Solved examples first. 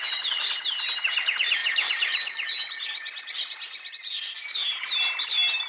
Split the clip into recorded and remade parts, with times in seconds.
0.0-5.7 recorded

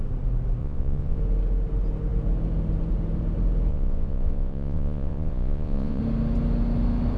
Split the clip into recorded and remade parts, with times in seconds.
0.0-0.6 recorded; 0.6-1.2 remade; 1.2-3.7 recorded; 3.7-6.0 remade; 6.0-7.2 recorded